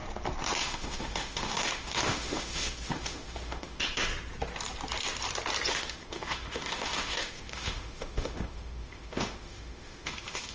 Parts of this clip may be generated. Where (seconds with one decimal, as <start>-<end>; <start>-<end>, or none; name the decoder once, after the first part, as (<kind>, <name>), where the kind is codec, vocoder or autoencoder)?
0.6-4.1 (autoencoder, DAC-VAE); 5.7-10.5